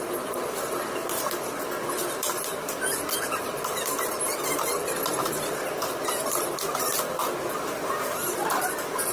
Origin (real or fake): real